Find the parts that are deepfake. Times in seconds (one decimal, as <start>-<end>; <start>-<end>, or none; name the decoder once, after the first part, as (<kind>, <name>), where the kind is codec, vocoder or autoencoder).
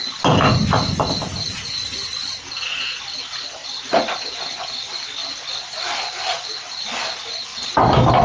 none